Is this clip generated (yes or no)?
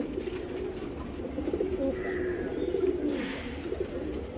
no